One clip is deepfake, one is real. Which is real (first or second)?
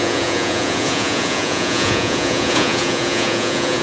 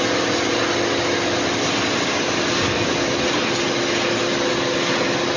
second